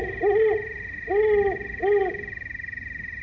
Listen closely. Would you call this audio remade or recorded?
recorded